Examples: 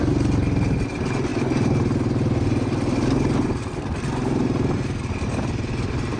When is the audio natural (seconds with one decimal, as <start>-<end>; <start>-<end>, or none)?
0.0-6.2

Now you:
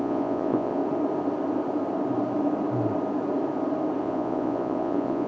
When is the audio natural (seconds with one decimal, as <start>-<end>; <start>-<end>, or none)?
0.8-4.0

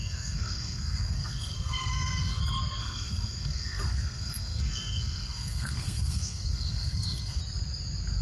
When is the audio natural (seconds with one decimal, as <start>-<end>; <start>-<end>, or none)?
2.4-2.8; 7.4-8.2

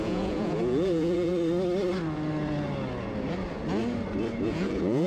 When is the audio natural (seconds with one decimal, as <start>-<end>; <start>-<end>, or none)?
1.3-4.4

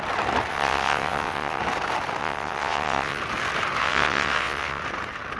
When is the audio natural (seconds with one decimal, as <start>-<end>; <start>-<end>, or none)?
0.0-0.5; 1.6-2.2; 3.2-3.8; 4.8-5.4

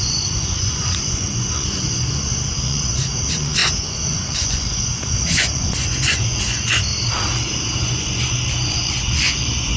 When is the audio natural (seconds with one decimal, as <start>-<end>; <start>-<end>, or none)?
6.9-7.8

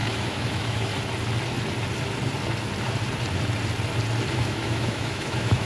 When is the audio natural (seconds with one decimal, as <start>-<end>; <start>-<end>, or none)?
0.9-4.3

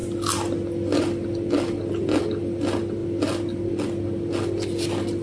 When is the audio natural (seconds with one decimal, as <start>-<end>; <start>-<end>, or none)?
0.0-5.2